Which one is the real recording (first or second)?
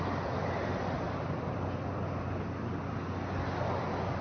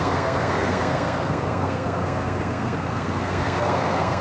first